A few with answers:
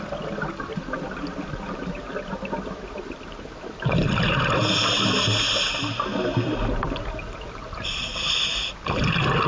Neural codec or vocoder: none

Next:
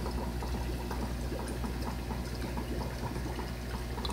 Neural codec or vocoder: none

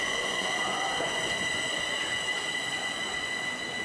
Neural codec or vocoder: vocoder, Vocos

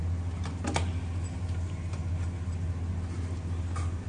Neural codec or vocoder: none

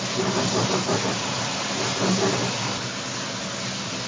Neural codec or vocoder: none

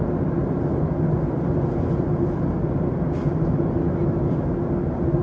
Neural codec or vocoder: none